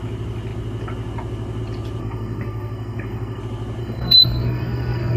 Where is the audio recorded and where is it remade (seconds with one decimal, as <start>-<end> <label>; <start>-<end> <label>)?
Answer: 0.0-2.0 recorded; 2.0-3.4 remade; 3.4-3.8 recorded; 3.8-5.2 remade